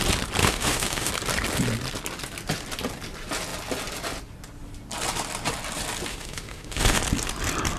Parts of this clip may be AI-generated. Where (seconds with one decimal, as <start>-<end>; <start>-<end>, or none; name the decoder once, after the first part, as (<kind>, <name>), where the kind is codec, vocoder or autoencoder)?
0.4-1.1 (autoencoder, DAC-VAE); 6.1-7.0